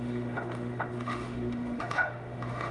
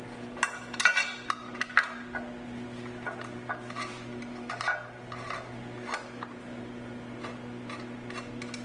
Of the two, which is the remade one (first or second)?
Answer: first